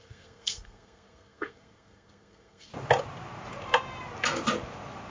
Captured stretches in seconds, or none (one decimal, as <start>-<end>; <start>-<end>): 2.7-5.1